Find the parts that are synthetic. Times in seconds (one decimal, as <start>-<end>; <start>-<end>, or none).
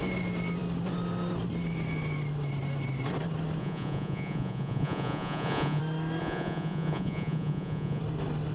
3.6-5.8; 6.2-8.0